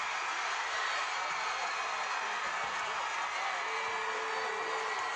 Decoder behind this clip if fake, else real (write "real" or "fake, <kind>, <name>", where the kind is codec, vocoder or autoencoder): real